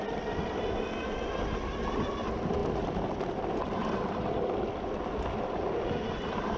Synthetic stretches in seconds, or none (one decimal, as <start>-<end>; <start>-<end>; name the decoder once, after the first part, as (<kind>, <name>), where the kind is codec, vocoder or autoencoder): none